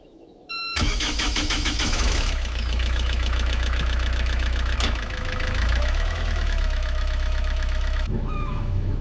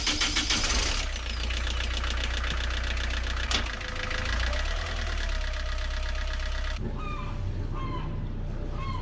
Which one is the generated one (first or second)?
first